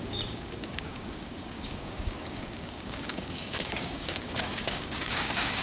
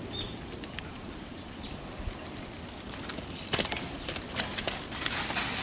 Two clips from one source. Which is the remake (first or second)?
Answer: first